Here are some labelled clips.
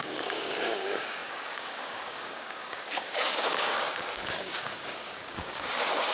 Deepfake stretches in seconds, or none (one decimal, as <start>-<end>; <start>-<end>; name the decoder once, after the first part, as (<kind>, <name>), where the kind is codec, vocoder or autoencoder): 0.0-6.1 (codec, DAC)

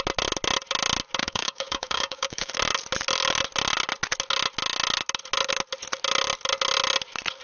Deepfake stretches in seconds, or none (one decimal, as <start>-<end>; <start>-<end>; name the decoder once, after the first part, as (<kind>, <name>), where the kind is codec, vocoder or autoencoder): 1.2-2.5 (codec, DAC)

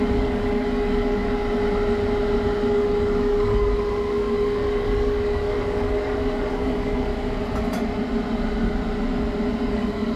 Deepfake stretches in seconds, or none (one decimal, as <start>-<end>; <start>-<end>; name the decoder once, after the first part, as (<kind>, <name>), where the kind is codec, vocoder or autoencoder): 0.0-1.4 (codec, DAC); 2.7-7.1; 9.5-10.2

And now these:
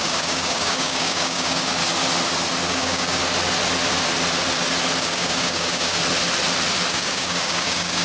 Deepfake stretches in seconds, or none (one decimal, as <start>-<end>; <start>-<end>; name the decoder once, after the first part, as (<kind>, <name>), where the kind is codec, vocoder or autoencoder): 0.0-1.8 (codec, DAC); 2.7-3.2; 5.0-6.0; 6.9-8.0

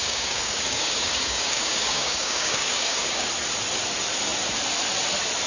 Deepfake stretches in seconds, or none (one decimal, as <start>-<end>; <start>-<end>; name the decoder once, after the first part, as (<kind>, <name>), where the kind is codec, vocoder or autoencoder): 0.0-3.3 (codec, DAC)